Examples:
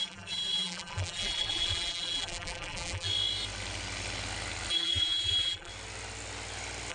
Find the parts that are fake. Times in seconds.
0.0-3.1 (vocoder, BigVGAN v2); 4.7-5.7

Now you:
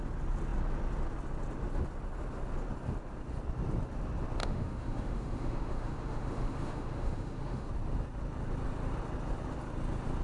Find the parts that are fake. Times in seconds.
4.4-7.7 (autoencoder, DAC-VAE)